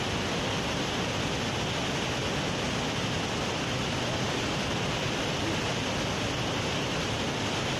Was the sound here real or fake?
real